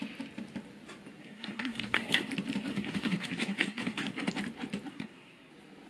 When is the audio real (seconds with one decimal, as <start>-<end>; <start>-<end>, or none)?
0.0-1.2; 2.3-2.7; 4.3-4.9; 5.5-5.9